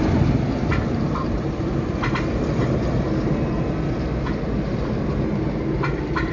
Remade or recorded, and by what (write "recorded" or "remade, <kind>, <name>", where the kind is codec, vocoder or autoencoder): recorded